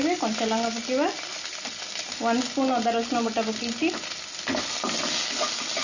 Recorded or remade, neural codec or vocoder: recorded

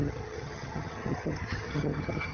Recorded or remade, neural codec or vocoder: remade, vocoder, HiFi-GAN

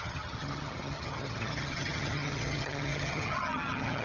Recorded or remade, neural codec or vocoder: remade, vocoder, HiFi-GAN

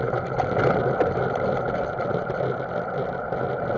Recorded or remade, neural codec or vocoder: recorded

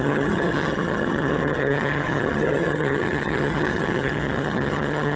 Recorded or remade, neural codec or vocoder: remade, vocoder, HiFi-GAN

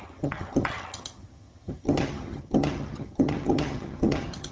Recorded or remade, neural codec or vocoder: remade, vocoder, HiFi-GAN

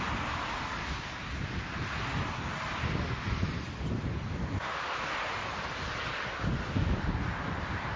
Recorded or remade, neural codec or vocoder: recorded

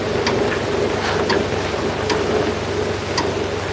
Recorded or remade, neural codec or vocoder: recorded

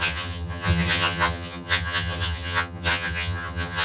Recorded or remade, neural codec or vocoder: remade, vocoder, HiFi-GAN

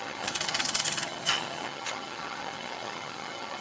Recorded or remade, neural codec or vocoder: remade, vocoder, HiFi-GAN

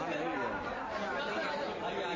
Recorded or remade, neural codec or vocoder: recorded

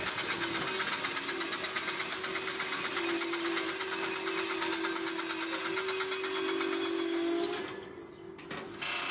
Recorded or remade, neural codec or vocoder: recorded